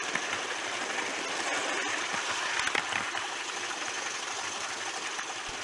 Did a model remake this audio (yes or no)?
no